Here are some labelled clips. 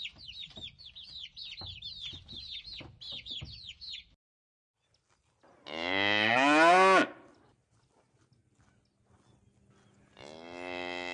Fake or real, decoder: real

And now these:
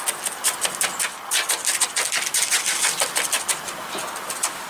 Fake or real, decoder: real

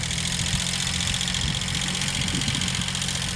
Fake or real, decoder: real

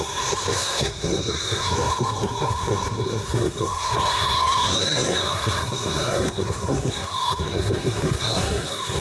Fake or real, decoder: fake, codec, SNAC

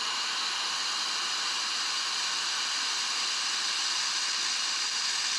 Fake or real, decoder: real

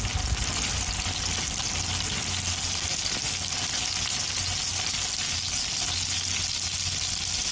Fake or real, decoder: real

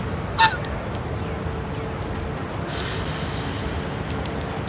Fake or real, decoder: real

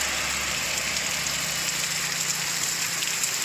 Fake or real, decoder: real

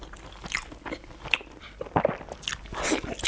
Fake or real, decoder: real